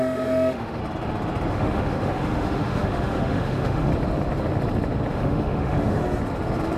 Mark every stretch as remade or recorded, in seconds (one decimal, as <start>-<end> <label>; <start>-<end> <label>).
0.0-0.8 remade; 0.8-1.5 recorded; 1.5-3.9 remade; 3.9-5.1 recorded; 5.1-6.0 remade; 6.0-6.8 recorded